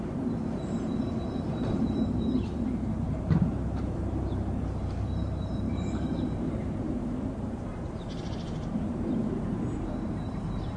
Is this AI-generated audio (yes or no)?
yes